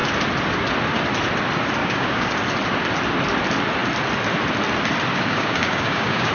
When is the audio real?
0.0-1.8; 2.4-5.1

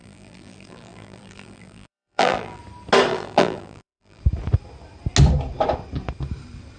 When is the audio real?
2.6-3.1; 4.2-6.8

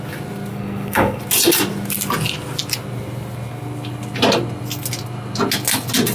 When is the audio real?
0.0-0.5; 1.2-6.1

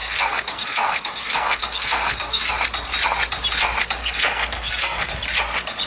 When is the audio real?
2.5-4.0; 5.1-5.9